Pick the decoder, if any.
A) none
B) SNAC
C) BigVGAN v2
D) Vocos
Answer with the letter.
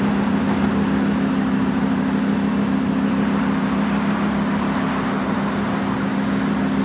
A